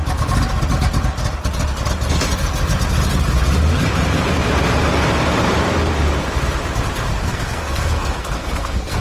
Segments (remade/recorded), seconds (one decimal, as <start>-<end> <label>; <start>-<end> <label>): 0.0-7.1 recorded; 7.1-9.0 remade